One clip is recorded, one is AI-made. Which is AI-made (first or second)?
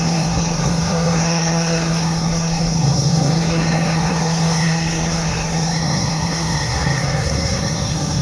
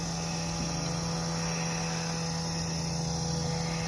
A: first